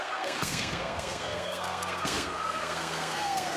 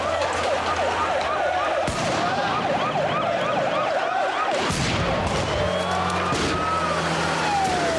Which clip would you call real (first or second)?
second